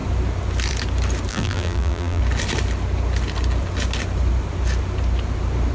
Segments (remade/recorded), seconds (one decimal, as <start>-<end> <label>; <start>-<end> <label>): 0.0-1.3 recorded; 1.3-2.2 remade; 2.2-5.7 recorded